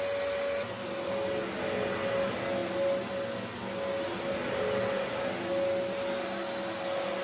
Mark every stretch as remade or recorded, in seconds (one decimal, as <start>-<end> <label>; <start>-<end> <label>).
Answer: 0.0-7.2 recorded